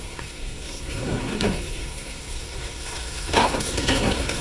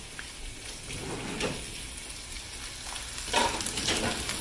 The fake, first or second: first